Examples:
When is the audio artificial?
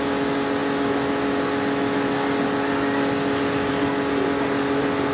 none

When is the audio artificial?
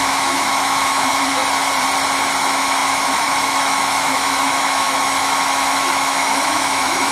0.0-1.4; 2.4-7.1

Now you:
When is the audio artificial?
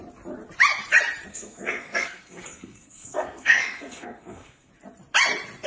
1.3-4.7